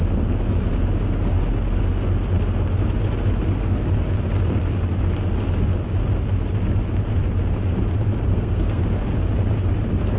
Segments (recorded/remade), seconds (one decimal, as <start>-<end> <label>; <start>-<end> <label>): 0.0-8.3 recorded; 8.3-8.8 remade; 8.8-10.2 recorded